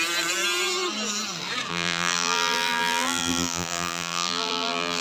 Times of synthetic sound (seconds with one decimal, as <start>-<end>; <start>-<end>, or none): 1.7-5.0